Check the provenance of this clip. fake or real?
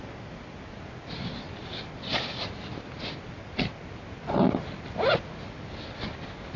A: real